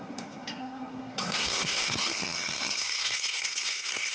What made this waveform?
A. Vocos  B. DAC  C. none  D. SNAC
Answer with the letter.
D